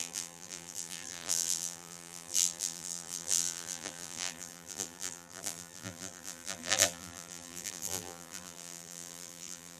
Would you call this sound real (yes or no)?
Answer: no